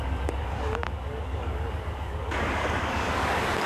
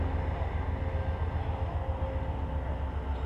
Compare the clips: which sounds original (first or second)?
second